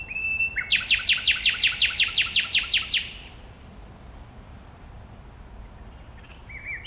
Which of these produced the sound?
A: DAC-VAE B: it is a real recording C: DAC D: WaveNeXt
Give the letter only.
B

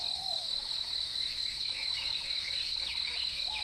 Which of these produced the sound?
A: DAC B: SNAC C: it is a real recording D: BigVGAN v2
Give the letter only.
A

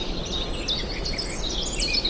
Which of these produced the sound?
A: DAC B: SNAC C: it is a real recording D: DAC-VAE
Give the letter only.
C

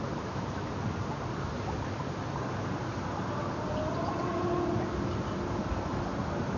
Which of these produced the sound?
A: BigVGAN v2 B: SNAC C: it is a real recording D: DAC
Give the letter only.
C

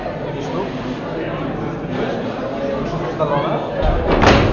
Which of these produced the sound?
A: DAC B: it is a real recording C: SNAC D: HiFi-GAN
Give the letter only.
B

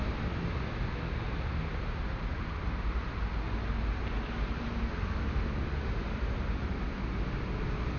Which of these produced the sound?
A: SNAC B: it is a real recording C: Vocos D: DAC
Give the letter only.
B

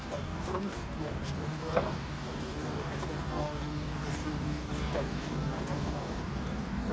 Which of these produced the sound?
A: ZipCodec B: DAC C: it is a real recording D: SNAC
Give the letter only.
B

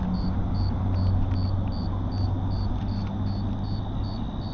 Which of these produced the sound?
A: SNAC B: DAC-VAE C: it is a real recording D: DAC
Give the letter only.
C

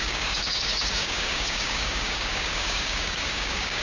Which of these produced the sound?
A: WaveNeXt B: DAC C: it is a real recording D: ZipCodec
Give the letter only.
B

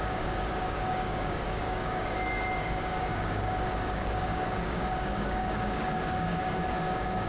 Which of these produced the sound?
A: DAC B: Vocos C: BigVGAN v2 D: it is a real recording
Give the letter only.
A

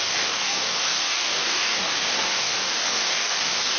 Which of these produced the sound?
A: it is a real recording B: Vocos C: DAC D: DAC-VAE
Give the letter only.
C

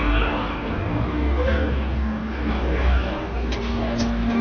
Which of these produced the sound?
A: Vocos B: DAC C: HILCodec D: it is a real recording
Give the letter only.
B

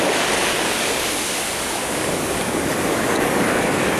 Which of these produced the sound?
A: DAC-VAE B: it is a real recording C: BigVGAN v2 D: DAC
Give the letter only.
D